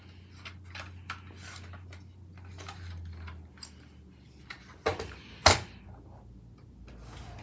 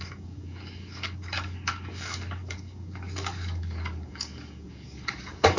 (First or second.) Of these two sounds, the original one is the first